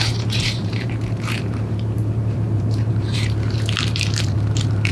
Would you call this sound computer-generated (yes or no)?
yes